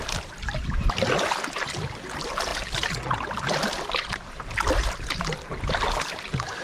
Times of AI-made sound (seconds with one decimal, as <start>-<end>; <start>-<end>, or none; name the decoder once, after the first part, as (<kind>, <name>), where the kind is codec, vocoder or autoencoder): none